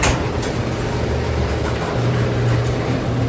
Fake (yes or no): yes